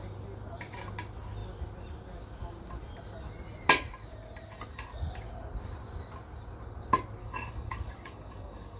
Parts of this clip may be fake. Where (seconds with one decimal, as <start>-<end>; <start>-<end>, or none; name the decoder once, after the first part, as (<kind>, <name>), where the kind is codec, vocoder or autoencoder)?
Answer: 7.2-8.8 (codec, DAC)